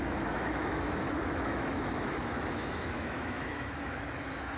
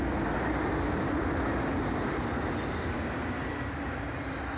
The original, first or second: second